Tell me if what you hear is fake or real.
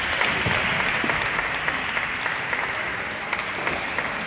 real